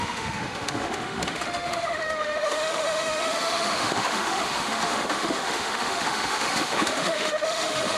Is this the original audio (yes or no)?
no